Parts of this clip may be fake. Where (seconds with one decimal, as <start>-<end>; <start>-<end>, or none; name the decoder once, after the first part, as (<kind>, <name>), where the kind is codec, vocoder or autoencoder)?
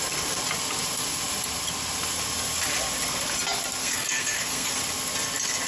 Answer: 3.8-4.8 (codec, SNAC)